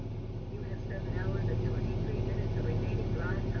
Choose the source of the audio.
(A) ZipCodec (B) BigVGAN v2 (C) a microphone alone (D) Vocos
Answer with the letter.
C